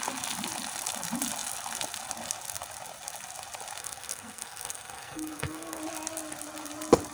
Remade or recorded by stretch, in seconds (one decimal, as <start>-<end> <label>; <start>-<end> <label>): 0.0-3.8 recorded; 3.8-5.8 remade; 5.8-7.1 recorded